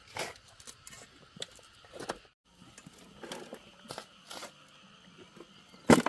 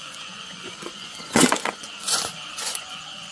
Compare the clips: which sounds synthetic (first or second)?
second